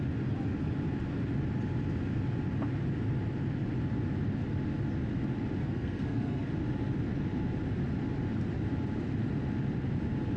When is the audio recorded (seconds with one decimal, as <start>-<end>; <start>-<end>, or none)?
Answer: 0.0-5.6; 6.5-10.4